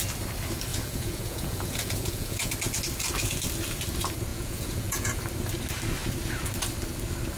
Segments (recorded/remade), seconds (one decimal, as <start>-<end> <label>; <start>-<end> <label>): 0.0-0.7 recorded; 0.7-2.5 remade; 2.5-4.3 recorded; 4.3-5.2 remade; 5.2-7.4 recorded